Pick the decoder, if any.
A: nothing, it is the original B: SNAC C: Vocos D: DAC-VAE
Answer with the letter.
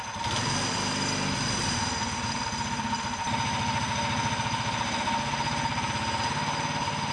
A